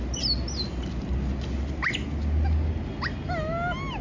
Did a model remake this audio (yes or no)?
no